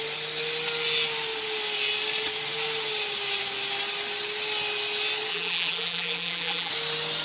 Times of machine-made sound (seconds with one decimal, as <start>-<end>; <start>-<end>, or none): 5.3-6.7